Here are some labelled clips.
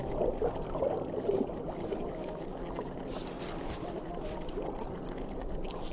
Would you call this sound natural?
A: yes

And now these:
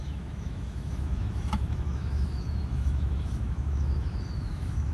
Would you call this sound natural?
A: no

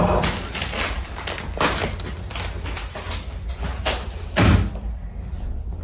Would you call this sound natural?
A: yes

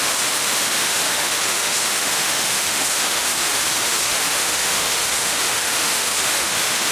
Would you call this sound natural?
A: no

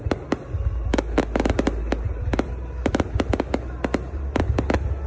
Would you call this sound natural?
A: yes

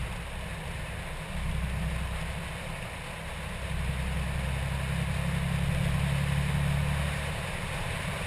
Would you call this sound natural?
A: yes